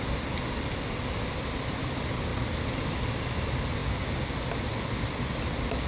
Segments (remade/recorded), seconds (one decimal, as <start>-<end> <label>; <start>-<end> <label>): 0.0-5.9 recorded